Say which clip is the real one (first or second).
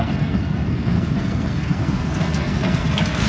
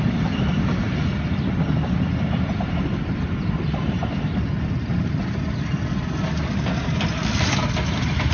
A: second